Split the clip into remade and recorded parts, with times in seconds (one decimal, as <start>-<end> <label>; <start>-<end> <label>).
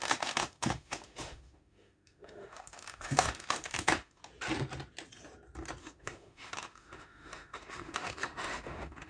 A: 0.0-4.2 remade; 4.2-5.8 recorded; 5.8-9.1 remade